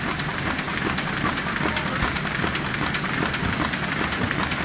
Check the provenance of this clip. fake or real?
real